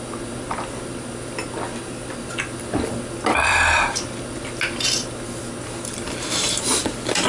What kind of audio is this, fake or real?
real